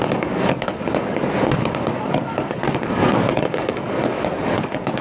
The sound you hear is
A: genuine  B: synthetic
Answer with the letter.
B